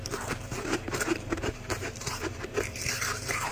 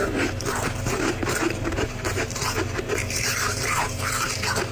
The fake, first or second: first